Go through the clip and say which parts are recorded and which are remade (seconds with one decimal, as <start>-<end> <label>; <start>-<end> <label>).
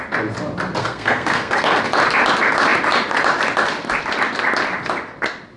0.0-0.8 recorded; 0.8-1.8 remade; 1.8-5.6 recorded